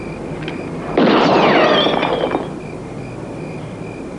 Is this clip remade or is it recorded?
recorded